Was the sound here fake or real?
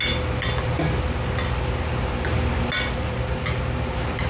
real